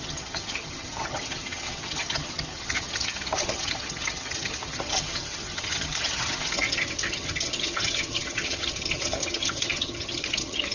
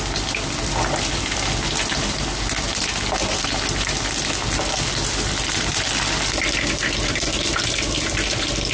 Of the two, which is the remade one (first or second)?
first